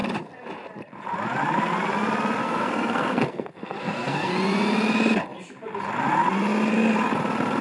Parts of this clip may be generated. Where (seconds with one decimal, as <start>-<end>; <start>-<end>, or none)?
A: 2.4-4.3